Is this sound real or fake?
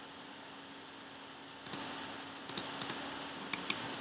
real